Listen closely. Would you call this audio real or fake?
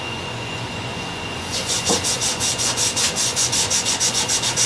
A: fake